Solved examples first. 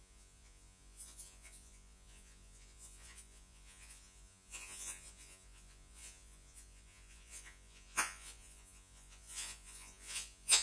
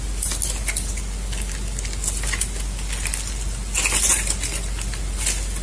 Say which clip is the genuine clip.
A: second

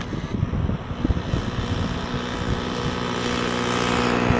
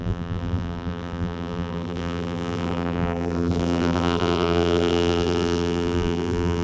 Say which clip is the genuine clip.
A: first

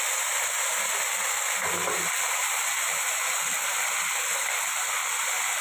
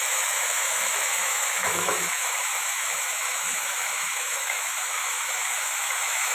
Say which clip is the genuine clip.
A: first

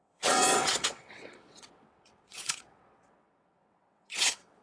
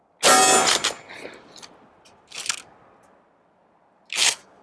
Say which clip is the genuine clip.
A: second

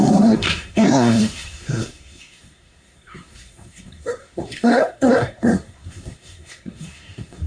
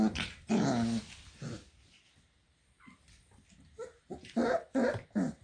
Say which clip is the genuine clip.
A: second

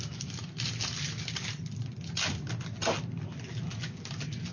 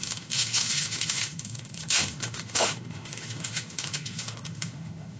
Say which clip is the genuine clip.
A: first